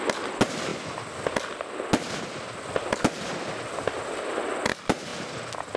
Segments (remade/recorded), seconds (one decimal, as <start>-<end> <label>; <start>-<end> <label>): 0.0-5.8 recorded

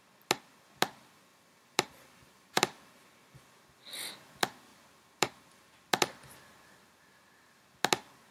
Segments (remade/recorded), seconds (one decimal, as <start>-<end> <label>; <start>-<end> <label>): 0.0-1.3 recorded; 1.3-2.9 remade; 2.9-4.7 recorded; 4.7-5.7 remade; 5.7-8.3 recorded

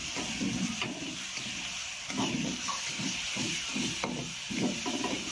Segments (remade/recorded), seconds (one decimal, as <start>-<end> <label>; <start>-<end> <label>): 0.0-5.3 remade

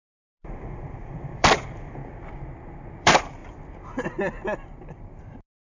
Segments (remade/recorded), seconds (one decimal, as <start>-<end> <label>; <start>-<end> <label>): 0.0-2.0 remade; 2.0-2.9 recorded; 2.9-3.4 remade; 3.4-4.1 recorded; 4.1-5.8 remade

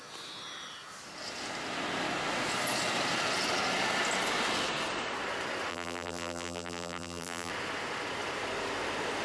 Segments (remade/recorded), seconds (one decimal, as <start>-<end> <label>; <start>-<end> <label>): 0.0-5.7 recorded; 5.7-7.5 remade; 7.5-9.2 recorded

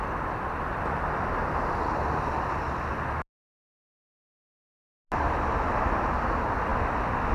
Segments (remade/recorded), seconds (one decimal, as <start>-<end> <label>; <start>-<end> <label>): 0.0-7.3 recorded

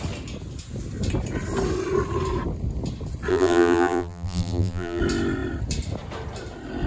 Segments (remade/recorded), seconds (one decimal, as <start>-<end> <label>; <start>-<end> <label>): 0.0-3.3 recorded; 3.3-5.0 remade; 5.0-6.9 recorded